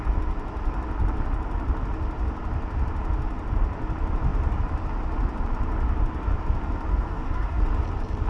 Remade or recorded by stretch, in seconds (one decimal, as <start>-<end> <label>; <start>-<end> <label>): 0.0-6.9 recorded; 6.9-7.6 remade; 7.6-8.3 recorded